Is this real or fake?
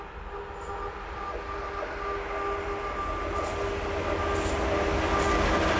real